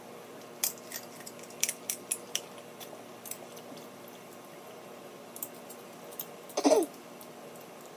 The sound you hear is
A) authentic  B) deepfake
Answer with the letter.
A